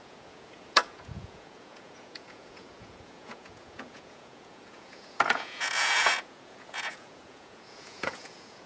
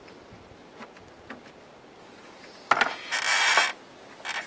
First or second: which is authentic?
second